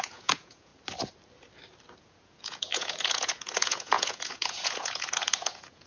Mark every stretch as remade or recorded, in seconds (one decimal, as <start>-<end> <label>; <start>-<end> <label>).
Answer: 0.0-0.7 remade; 0.7-2.0 recorded; 2.0-5.9 remade